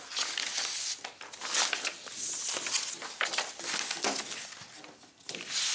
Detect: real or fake real